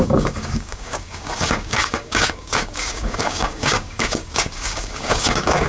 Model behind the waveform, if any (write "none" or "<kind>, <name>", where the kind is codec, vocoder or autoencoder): codec, DAC